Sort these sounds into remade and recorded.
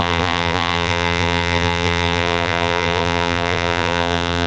remade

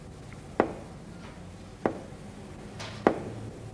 recorded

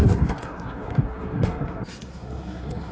remade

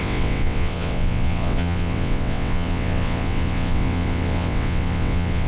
remade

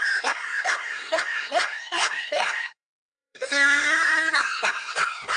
remade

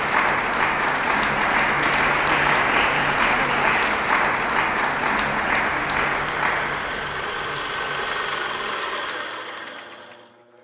recorded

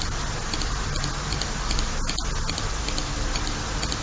recorded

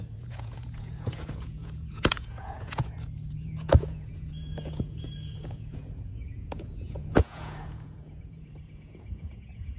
remade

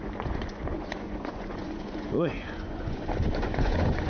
remade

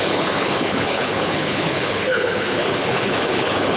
remade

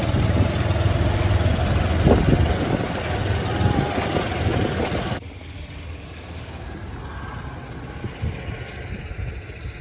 recorded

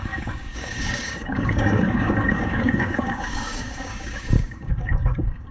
remade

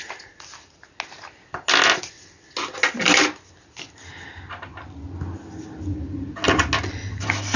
recorded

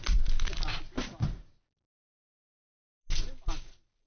recorded